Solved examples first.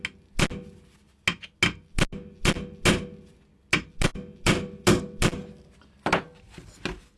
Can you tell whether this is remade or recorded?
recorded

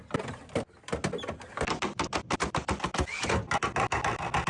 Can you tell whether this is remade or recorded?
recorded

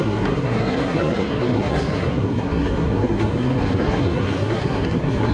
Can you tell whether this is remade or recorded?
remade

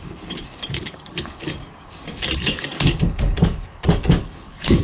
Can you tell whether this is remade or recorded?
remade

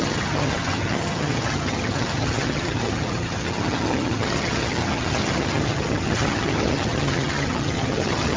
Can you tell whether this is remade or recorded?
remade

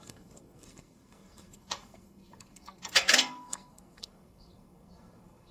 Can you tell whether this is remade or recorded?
remade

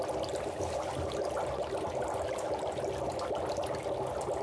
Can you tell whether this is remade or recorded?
recorded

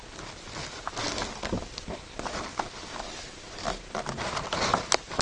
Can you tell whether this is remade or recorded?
recorded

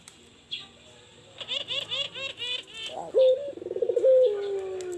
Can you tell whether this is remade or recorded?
recorded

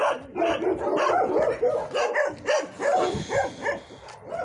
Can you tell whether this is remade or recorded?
recorded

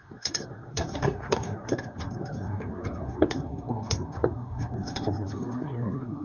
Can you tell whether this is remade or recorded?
remade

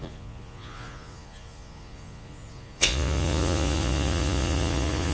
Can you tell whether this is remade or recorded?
remade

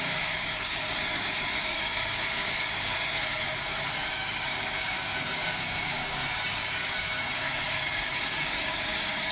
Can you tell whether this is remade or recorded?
remade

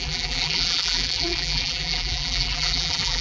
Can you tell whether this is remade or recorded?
remade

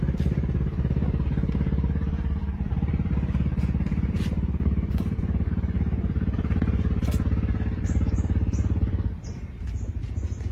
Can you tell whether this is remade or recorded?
remade